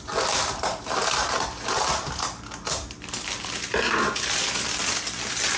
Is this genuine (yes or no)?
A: yes